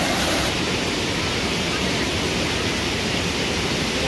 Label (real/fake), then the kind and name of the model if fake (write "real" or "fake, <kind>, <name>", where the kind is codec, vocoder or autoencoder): fake, vocoder, BigVGAN v2